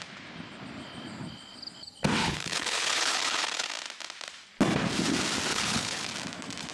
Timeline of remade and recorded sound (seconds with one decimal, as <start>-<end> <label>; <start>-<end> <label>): 0.0-2.2 recorded; 2.2-3.7 remade; 3.7-5.5 recorded; 5.5-6.1 remade; 6.1-6.7 recorded